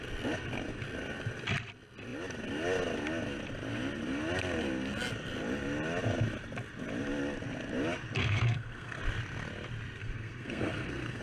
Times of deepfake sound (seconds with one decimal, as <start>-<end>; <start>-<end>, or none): 8.2-9.0; 10.0-11.2